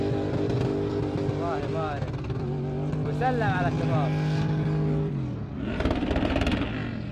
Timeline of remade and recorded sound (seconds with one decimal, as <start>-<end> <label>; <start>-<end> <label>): 0.0-7.1 recorded